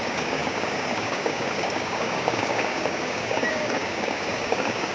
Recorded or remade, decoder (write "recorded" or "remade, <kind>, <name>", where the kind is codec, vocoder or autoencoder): remade, codec, DAC